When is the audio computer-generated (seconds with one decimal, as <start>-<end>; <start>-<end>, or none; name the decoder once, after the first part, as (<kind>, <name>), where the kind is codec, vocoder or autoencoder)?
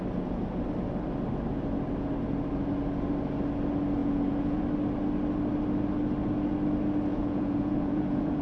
4.0-4.6 (vocoder, Vocos); 7.1-8.4